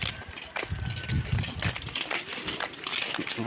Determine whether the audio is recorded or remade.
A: recorded